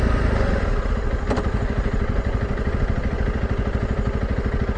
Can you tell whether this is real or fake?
real